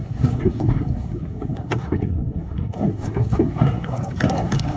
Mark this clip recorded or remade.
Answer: remade